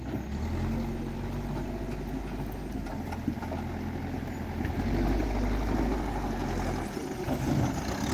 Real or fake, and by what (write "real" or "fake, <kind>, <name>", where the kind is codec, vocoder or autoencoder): real